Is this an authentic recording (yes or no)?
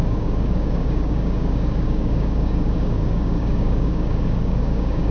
no